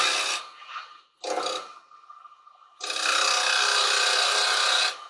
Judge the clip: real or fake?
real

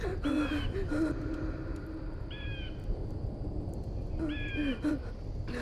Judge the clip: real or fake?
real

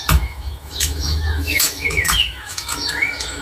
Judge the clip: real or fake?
fake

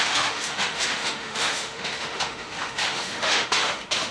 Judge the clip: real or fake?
fake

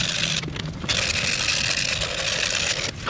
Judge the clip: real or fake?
real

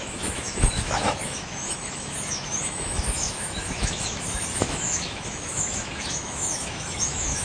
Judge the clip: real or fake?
fake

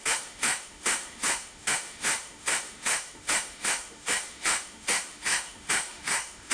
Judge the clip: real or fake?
fake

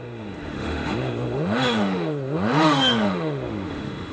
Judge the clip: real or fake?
fake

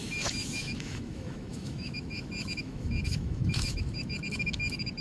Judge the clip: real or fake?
fake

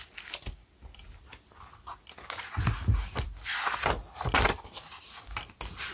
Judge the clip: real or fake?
real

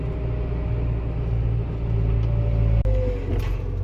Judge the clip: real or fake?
real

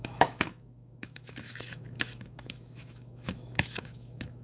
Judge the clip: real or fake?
fake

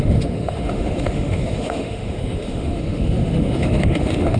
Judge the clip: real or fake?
fake